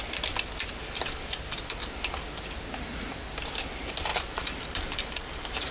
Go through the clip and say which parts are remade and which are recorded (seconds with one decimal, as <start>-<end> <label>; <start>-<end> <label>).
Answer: 0.0-4.1 recorded; 4.1-5.7 remade